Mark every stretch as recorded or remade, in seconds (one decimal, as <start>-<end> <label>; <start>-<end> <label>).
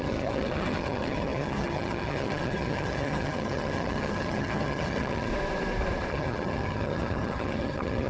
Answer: 0.0-5.3 remade; 5.3-6.1 recorded; 6.1-8.1 remade